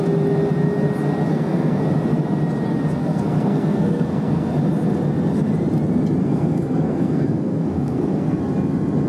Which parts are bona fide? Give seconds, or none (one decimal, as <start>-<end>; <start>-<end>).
0.0-1.3; 1.8-3.0; 4.5-6.2; 8.4-9.1